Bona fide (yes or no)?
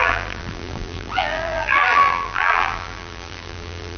no